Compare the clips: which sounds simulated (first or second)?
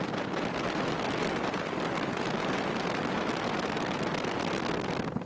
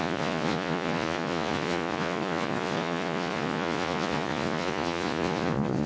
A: second